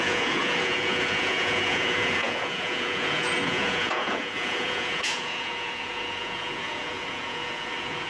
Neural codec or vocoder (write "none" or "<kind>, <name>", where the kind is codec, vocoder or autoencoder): vocoder, Vocos